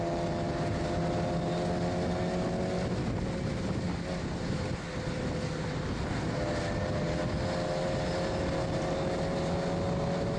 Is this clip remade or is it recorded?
recorded